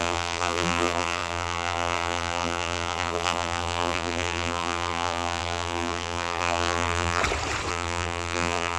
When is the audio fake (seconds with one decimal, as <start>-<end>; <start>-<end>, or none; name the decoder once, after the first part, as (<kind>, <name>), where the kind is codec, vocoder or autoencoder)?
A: 0.0-7.2 (vocoder, BigVGAN v2); 7.7-8.8